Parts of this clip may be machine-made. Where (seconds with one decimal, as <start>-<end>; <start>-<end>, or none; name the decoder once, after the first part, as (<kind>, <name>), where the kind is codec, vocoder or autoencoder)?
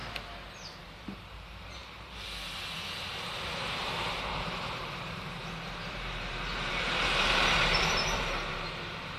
0.8-1.8 (vocoder, BigVGAN v2); 3.0-9.2